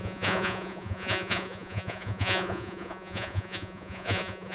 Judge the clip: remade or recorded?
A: remade